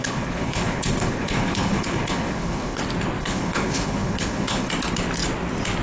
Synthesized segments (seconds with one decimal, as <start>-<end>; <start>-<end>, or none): 0.0-2.8; 3.2-4.7